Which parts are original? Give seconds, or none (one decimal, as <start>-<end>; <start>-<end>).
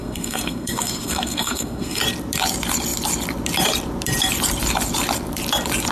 2.0-5.9